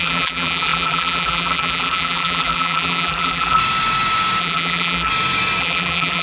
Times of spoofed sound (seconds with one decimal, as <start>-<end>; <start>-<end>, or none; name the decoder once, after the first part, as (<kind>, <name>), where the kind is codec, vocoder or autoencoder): 0.0-3.6 (vocoder, BigVGAN v2); 4.4-5.1; 5.6-6.2